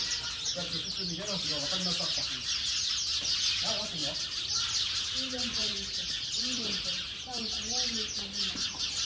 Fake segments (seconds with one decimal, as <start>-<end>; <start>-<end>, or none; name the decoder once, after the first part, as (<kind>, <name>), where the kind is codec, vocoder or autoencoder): 5.6-7.4 (vocoder, BigVGAN v2)